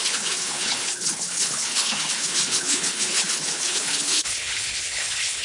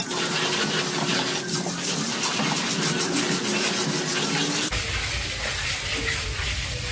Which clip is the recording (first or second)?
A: second